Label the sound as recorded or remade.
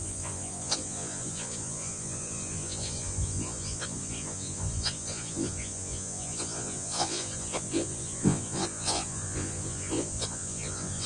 remade